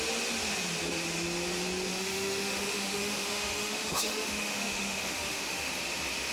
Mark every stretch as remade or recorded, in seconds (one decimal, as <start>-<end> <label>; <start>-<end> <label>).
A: 0.0-1.9 recorded; 1.9-5.7 remade; 5.7-6.3 recorded